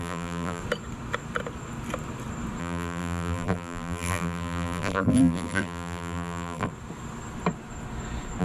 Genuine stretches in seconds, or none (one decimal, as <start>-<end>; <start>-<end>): 0.6-2.6; 6.7-8.4